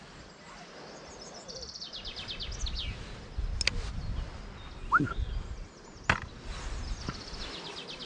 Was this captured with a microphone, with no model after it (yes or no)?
yes